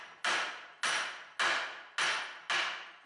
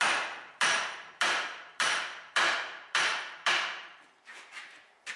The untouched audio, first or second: first